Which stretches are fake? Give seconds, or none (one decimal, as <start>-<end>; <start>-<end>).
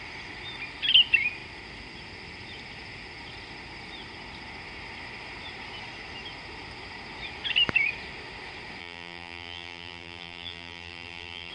8.8-11.5